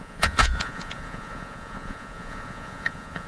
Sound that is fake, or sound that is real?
fake